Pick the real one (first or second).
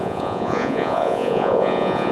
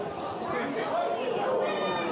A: second